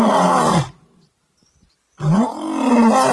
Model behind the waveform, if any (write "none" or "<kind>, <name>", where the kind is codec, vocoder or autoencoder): none